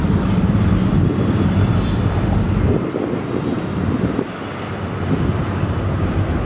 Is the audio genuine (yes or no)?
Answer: yes